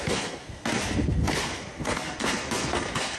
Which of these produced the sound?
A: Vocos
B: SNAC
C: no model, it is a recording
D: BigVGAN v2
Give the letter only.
B